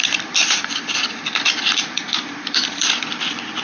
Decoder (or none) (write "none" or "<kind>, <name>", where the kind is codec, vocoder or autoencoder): vocoder, BigVGAN v2